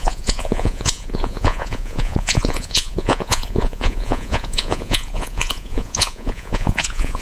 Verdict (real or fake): fake